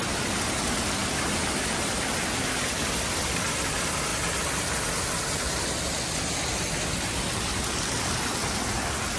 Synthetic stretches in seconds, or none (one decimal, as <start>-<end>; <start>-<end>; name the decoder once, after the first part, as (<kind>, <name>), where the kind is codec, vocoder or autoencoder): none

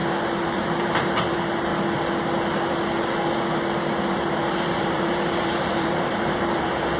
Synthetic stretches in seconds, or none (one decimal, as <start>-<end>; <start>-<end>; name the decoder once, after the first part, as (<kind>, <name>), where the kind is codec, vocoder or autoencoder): 0.5-1.7 (vocoder, BigVGAN v2); 4.5-7.0

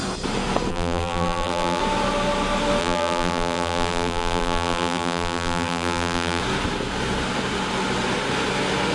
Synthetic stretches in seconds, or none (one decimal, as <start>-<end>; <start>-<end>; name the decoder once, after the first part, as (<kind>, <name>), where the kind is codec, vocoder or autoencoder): 0.7-1.8 (vocoder, BigVGAN v2); 2.8-6.4

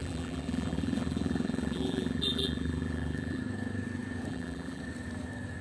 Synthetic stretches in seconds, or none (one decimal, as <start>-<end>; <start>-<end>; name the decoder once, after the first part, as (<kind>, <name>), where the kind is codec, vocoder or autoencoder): 0.0-3.4 (vocoder, BigVGAN v2); 4.3-4.8

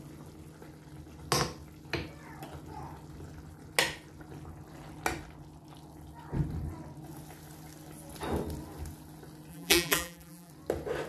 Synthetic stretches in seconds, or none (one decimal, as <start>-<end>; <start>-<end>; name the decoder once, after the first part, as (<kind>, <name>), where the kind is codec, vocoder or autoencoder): 9.5-10.5 (vocoder, BigVGAN v2)

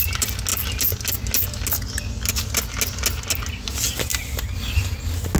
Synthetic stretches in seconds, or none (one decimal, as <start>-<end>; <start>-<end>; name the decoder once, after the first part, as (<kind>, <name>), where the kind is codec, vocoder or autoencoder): none